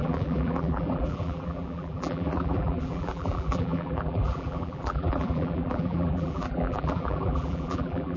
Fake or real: fake